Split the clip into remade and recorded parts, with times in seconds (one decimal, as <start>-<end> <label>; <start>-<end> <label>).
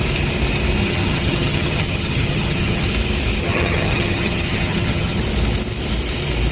0.0-0.8 recorded; 0.8-2.9 remade; 2.9-3.4 recorded; 3.4-5.2 remade; 5.2-6.5 recorded